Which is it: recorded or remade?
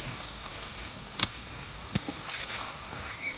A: remade